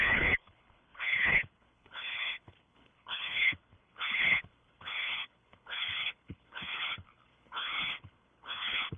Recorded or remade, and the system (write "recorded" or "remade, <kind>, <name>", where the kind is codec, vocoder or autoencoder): remade, codec, HILCodec